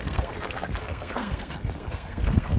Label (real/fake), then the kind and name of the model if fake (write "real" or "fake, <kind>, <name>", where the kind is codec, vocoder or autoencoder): fake, codec, SNAC